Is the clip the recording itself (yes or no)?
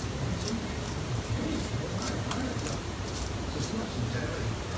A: no